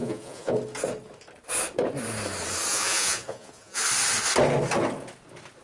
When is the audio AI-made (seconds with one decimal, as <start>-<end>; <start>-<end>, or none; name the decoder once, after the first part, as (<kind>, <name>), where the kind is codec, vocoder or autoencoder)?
0.0-0.5 (vocoder, Vocos); 2.7-3.8

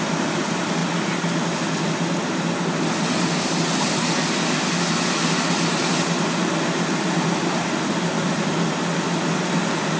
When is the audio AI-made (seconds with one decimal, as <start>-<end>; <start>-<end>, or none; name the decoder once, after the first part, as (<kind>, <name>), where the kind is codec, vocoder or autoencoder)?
none